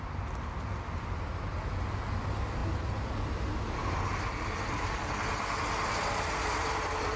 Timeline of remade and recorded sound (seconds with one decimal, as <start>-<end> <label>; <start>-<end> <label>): 0.0-6.5 recorded; 6.5-7.2 remade